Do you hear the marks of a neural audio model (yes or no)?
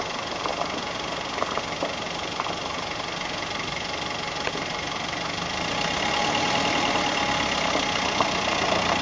no